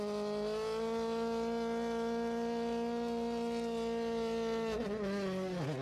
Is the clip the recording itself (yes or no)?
yes